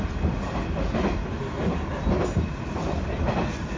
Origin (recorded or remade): recorded